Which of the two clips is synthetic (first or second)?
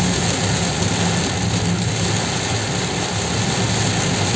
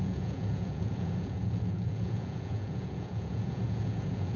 second